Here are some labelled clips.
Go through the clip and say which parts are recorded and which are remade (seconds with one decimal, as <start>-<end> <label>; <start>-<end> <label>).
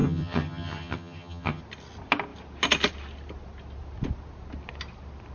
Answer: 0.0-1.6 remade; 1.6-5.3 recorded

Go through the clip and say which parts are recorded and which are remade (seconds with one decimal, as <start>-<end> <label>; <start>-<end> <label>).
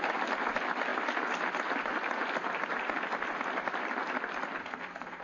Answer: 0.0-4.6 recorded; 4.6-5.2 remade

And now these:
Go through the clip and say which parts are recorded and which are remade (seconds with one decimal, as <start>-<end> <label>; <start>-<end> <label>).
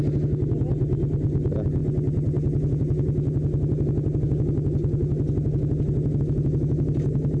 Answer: 0.0-7.4 recorded